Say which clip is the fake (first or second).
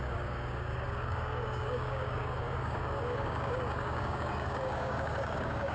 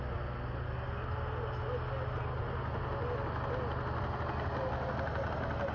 first